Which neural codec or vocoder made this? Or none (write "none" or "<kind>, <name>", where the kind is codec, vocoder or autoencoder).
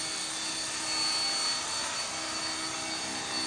none